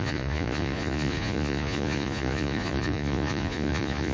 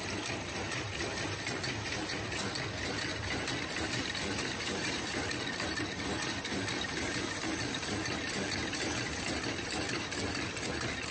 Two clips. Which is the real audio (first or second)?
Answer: second